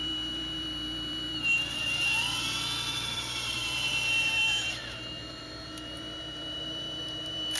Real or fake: fake